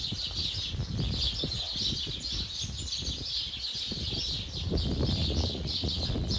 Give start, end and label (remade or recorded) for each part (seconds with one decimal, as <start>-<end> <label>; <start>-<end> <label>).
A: 0.0-5.2 recorded; 5.2-6.0 remade; 6.0-6.4 recorded